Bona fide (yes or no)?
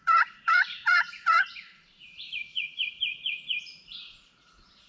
no